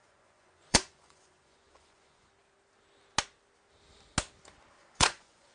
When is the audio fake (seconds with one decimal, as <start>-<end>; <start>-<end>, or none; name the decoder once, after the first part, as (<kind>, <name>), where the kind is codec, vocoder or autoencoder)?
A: 0.0-2.3 (vocoder, Vocos); 4.8-5.5